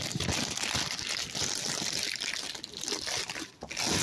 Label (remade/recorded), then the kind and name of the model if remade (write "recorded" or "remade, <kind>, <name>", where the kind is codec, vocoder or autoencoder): recorded